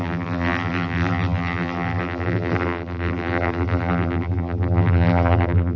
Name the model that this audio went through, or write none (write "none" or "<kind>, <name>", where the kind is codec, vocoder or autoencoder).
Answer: vocoder, BigVGAN v2